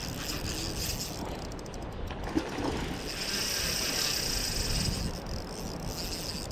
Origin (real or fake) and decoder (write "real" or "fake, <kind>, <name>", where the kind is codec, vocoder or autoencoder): real